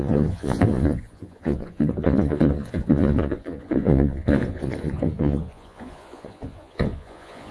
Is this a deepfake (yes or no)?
yes